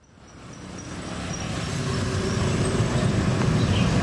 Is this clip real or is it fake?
real